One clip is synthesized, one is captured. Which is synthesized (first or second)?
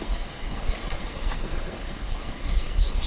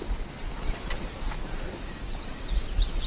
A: first